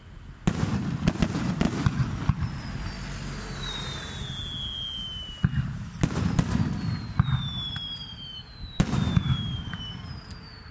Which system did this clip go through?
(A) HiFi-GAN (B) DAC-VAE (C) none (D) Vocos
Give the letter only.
C